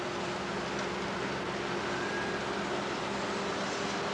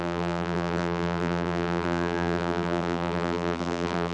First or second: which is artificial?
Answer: second